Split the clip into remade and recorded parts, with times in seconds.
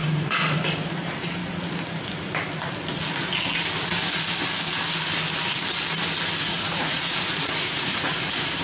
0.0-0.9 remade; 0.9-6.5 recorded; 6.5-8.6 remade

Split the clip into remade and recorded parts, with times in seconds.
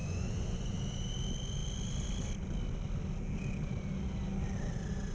0.0-0.7 remade; 0.7-5.1 recorded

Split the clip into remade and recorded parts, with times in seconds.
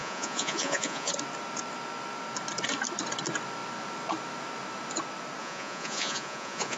0.0-1.1 remade; 1.1-5.4 recorded; 5.4-6.8 remade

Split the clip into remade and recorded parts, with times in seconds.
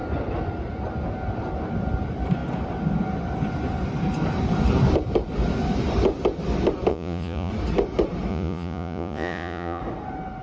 0.0-6.9 recorded; 6.9-7.5 remade; 7.5-8.3 recorded; 8.3-9.8 remade; 9.8-10.4 recorded